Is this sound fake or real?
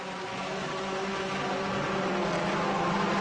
real